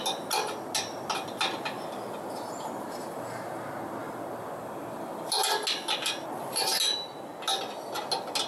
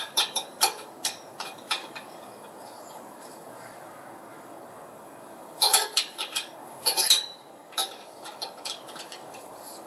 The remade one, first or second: second